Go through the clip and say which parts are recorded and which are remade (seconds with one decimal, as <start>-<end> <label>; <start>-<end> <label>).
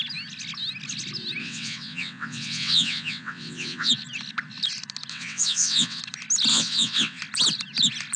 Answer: 0.0-1.4 recorded; 1.4-3.9 remade; 3.9-5.1 recorded; 5.1-6.0 remade; 6.0-6.5 recorded; 6.5-7.2 remade; 7.2-8.2 recorded